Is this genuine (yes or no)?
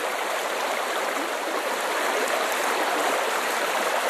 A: yes